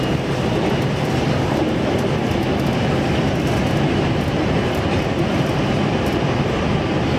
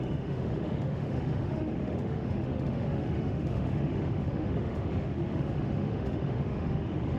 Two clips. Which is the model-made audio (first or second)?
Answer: second